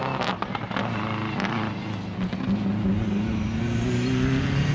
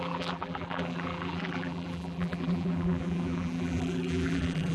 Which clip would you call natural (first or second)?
first